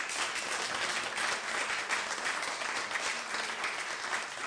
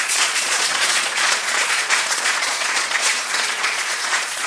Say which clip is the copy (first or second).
second